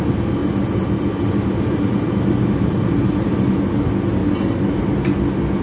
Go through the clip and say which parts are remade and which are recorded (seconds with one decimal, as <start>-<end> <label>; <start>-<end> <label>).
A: 0.0-0.4 recorded; 0.4-3.8 remade; 3.8-4.2 recorded; 4.2-4.8 remade; 4.8-5.6 recorded